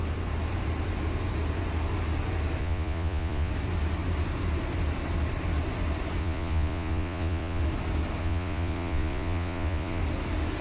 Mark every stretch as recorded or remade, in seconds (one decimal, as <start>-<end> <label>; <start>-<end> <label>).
0.0-2.6 recorded; 2.6-3.5 remade; 3.5-6.2 recorded; 6.2-7.6 remade; 7.6-8.2 recorded; 8.2-10.0 remade; 10.0-10.6 recorded